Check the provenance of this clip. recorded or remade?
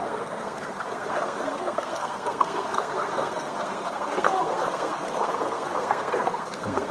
remade